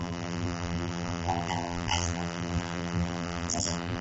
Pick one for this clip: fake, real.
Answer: fake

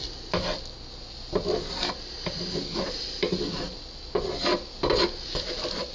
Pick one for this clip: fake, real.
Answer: real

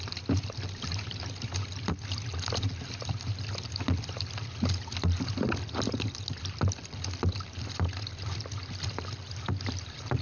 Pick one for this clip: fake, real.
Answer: real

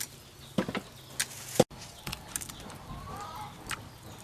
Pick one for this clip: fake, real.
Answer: real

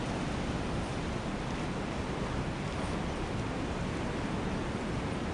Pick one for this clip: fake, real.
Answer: real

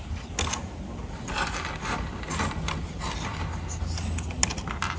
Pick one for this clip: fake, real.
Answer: real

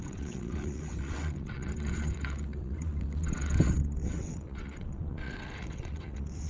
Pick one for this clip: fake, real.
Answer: fake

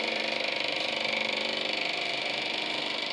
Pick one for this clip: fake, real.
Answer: fake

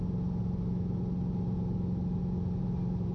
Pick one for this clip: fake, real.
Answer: real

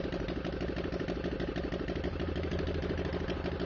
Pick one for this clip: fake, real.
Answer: real